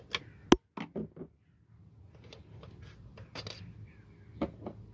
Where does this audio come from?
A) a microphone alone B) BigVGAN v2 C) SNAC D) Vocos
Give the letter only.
A